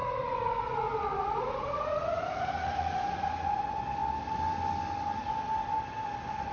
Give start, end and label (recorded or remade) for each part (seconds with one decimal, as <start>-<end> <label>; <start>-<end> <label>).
0.0-3.6 remade; 3.6-6.5 recorded